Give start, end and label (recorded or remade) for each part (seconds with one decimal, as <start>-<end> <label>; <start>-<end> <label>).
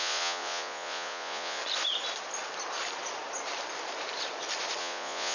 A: 0.0-1.6 remade; 1.6-4.8 recorded; 4.8-5.3 remade